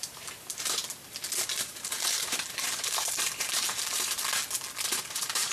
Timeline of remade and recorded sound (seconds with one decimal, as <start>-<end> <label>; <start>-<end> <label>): 0.0-0.8 remade; 0.8-1.6 recorded; 1.6-4.4 remade; 4.4-4.9 recorded; 4.9-5.5 remade